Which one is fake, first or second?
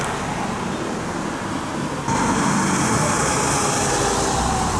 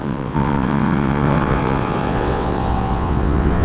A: second